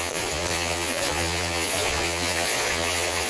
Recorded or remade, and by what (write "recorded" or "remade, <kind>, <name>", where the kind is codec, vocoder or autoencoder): remade, vocoder, Vocos